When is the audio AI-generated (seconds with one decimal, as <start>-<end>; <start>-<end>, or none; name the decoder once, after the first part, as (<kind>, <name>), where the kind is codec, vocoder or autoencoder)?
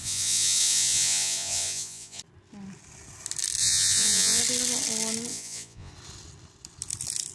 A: 0.0-2.2 (vocoder, Vocos); 3.6-4.4; 5.3-5.9